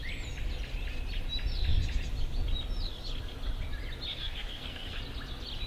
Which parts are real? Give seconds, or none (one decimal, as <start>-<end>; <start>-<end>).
0.0-4.1; 5.0-5.7

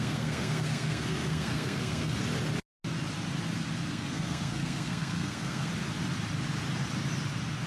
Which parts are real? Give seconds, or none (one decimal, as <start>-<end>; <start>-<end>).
2.2-3.9; 5.7-7.7

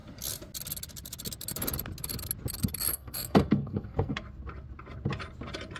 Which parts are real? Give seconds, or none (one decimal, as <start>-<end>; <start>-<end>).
0.0-2.9; 4.2-5.8

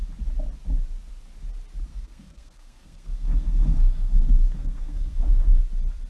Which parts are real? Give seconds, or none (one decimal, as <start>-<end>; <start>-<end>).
0.0-1.9; 5.6-6.1

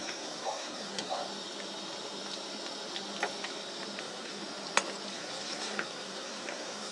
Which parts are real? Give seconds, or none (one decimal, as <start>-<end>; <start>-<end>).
1.2-4.0; 4.4-5.1